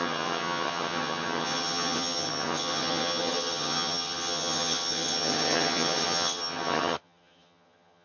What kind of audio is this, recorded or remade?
remade